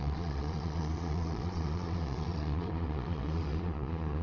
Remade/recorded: remade